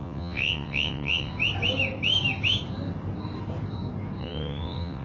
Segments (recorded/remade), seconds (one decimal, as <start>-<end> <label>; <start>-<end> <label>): 0.0-1.3 remade; 1.3-4.2 recorded; 4.2-5.0 remade